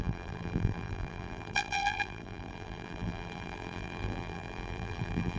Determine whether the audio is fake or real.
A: fake